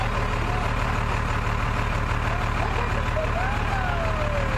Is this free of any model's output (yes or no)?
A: yes